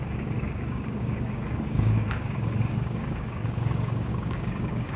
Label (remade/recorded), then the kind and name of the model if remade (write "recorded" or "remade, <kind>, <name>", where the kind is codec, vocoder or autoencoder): remade, codec, DAC